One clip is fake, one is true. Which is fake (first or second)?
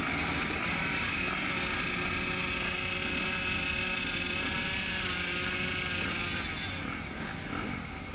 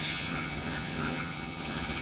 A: second